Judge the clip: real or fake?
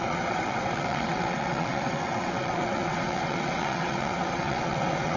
fake